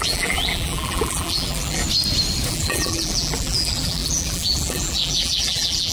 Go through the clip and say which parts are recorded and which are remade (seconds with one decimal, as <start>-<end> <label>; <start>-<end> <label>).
0.0-1.8 remade; 1.8-2.5 recorded; 2.5-5.9 remade